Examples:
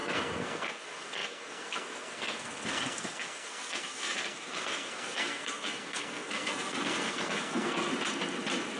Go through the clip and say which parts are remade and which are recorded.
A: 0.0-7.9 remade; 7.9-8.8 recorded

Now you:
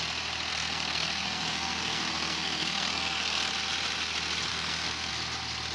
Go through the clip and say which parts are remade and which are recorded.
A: 0.0-0.5 recorded; 0.5-3.5 remade; 3.5-4.5 recorded; 4.5-5.1 remade; 5.1-5.7 recorded

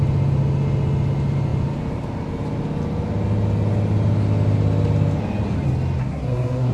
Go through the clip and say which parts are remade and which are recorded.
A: 0.0-6.0 recorded; 6.0-6.7 remade